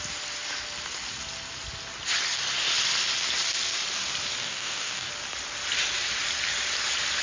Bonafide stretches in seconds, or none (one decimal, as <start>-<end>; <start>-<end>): 0.0-4.4; 5.1-7.2